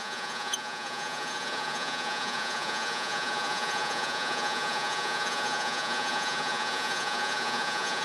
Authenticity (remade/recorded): remade